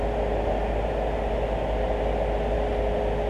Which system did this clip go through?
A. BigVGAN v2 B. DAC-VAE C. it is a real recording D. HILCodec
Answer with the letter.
C